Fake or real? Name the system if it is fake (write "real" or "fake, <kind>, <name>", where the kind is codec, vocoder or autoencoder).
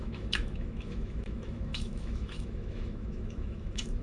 fake, autoencoder, DAC-VAE